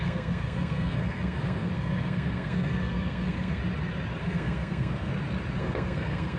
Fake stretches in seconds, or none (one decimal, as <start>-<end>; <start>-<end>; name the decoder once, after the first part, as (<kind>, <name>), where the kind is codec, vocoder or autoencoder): 0.0-3.6 (codec, SNAC); 4.2-5.1; 5.6-6.4